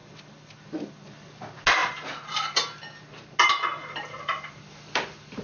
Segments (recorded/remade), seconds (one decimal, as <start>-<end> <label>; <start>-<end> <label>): 0.0-0.9 remade; 0.9-1.8 recorded; 1.8-2.4 remade; 2.4-3.8 recorded; 3.8-5.4 remade